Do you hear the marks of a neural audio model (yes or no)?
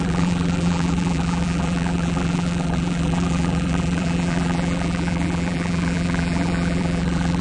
yes